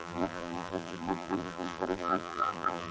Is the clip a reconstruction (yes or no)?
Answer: yes